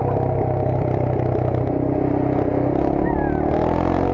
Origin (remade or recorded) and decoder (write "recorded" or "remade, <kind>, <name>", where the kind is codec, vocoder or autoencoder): recorded